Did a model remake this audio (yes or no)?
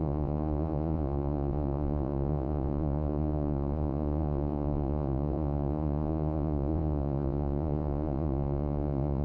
yes